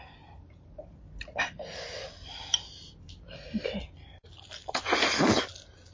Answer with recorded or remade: recorded